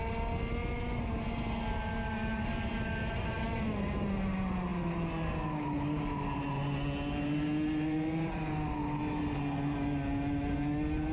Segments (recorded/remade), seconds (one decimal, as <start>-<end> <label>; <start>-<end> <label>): 0.0-11.1 recorded